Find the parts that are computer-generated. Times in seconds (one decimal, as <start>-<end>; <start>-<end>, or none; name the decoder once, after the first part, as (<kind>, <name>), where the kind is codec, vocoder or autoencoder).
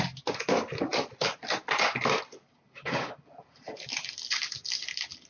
none